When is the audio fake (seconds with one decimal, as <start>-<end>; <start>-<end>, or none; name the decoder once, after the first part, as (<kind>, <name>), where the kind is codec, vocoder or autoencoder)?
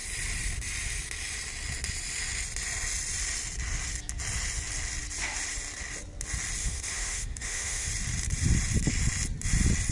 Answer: 6.6-7.9 (autoencoder, DAC-VAE)